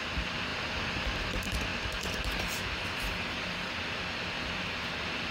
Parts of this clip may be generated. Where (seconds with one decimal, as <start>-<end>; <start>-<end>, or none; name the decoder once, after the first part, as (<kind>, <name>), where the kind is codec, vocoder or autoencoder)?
0.0-0.5 (vocoder, BigVGAN v2); 1.2-5.3